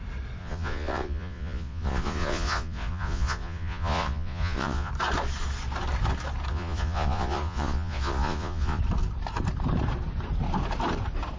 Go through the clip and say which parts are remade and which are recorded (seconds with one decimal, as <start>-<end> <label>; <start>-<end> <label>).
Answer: 0.0-0.4 recorded; 0.4-4.9 remade; 4.9-6.5 recorded; 6.5-8.8 remade; 8.8-11.4 recorded